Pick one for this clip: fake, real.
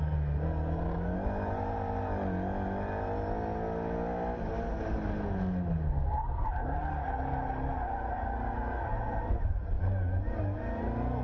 real